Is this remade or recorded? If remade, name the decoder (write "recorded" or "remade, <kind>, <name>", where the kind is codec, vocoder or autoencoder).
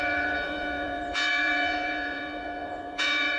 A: remade, vocoder, Vocos